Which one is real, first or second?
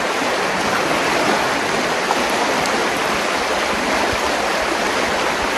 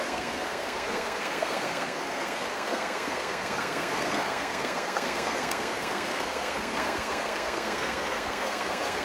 first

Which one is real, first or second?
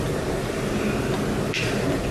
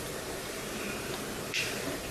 first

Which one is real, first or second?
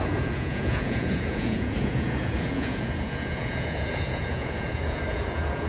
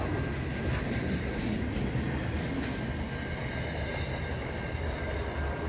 second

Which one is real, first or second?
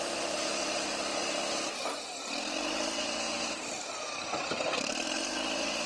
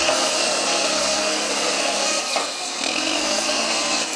first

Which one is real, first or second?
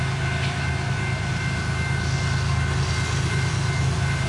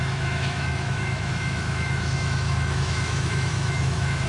first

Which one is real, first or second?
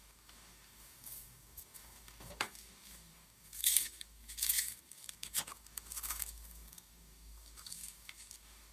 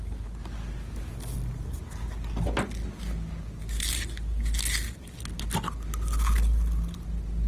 second